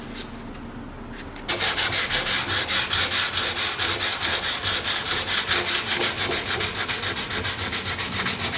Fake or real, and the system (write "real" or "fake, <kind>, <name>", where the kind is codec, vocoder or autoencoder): real